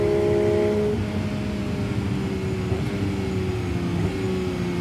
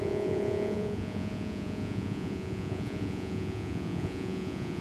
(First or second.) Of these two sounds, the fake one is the second